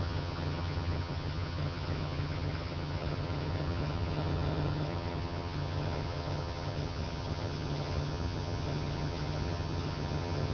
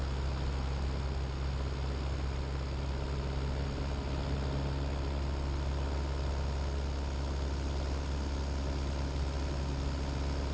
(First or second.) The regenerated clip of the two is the first